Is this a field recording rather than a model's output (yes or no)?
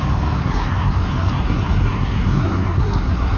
no